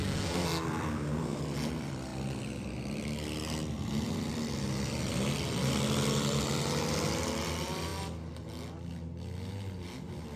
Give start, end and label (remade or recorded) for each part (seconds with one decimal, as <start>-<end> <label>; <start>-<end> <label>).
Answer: 0.0-1.4 remade; 1.4-10.4 recorded